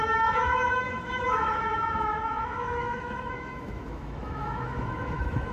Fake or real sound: fake